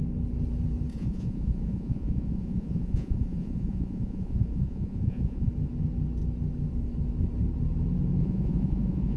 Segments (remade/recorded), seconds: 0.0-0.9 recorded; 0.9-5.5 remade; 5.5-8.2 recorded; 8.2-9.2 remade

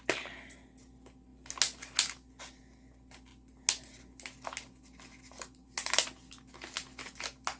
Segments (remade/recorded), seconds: 0.0-7.6 recorded

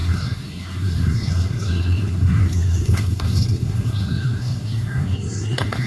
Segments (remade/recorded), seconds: 0.0-5.9 remade

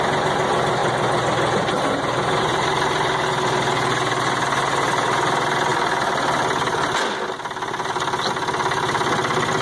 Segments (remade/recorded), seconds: 0.0-9.6 recorded

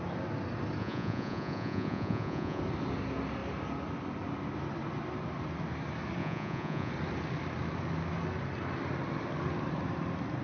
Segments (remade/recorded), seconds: 0.0-0.8 recorded; 0.8-2.6 remade; 2.6-6.2 recorded; 6.2-6.9 remade; 6.9-10.4 recorded

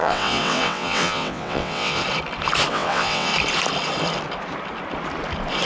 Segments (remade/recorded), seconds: 0.0-2.0 remade; 2.0-2.7 recorded; 2.7-3.3 remade; 3.3-5.7 recorded